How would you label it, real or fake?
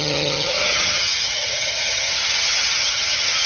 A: fake